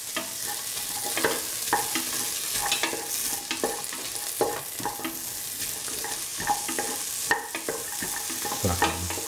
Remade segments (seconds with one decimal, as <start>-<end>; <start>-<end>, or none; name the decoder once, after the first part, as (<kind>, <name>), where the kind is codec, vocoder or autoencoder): none